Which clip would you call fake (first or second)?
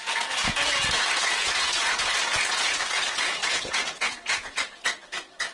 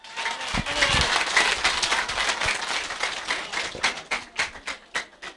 first